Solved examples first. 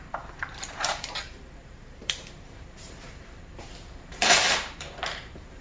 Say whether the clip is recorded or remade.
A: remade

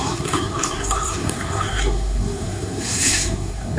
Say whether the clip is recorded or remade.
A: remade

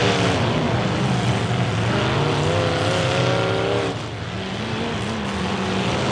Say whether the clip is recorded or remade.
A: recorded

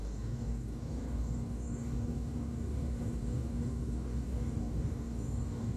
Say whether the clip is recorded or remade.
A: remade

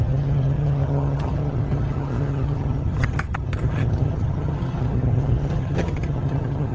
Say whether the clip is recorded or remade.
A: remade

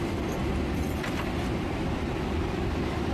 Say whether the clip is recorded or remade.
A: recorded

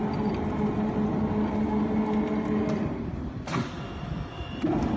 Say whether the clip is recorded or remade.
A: recorded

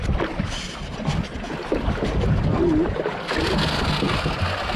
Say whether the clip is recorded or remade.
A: recorded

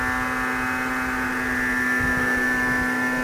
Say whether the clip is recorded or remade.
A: recorded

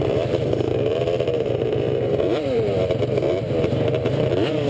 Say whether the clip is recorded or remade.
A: remade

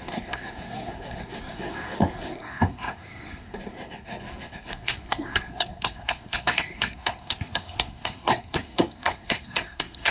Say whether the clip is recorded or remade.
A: remade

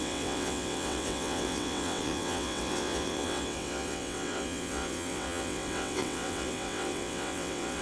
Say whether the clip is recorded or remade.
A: remade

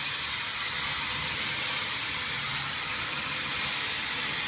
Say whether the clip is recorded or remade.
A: recorded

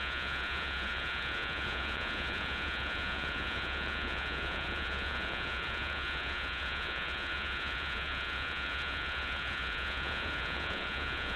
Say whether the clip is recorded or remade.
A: remade